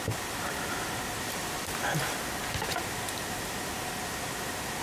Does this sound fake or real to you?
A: real